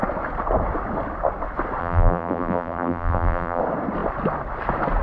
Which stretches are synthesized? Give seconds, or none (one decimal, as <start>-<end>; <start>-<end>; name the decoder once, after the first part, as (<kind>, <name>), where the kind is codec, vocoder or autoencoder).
1.8-3.6 (vocoder, BigVGAN v2)